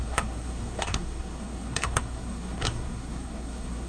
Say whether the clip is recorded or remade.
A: remade